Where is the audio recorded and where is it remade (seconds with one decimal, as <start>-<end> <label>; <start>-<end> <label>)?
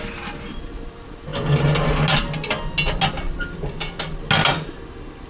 0.0-5.3 recorded